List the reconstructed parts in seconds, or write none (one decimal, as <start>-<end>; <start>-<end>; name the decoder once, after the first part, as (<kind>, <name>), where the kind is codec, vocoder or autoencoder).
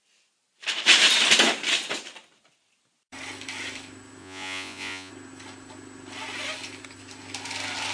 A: 4.2-5.1 (vocoder, Vocos)